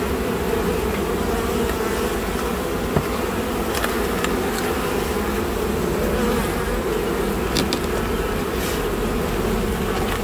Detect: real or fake real